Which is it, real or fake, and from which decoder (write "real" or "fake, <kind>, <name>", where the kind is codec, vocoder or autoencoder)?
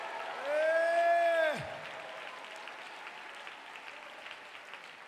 real